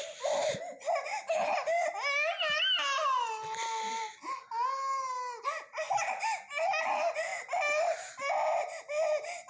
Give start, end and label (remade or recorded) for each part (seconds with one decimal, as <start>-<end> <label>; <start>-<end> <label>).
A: 0.0-9.5 recorded